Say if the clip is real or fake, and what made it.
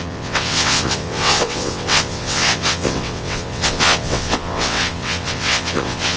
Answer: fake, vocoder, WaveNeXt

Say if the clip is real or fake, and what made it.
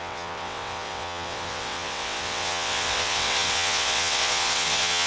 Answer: fake, vocoder, WaveNeXt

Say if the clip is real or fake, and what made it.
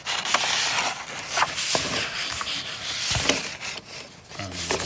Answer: real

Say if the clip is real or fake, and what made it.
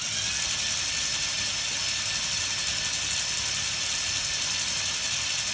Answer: real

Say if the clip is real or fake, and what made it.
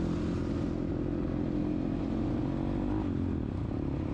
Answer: real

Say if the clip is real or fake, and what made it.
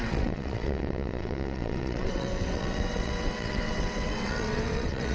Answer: fake, vocoder, WaveNeXt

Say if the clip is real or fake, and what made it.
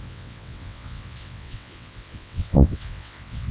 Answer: fake, vocoder, WaveNeXt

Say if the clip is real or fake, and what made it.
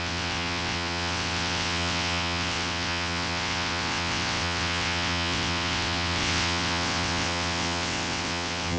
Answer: fake, vocoder, WaveNeXt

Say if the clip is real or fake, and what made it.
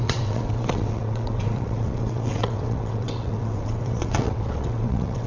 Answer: fake, vocoder, WaveNeXt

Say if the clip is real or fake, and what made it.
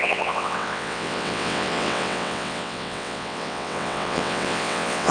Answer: fake, vocoder, WaveNeXt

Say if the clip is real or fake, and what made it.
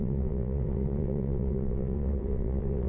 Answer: fake, vocoder, WaveNeXt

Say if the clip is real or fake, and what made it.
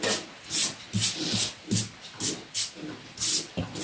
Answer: real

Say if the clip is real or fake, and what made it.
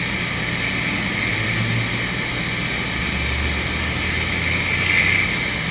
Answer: real